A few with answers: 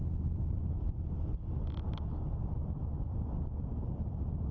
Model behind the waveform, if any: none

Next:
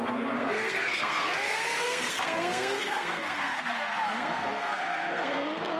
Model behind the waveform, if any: codec, SNAC